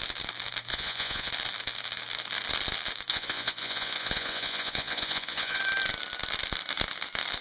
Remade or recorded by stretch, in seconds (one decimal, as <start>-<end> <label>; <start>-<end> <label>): 0.0-0.7 recorded; 0.7-1.3 remade; 1.3-3.1 recorded; 3.1-5.6 remade; 5.6-7.4 recorded